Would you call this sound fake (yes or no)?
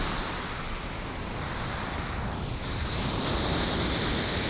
no